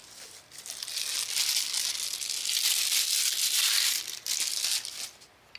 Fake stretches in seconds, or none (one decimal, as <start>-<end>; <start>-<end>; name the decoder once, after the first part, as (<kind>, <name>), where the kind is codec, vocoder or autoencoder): none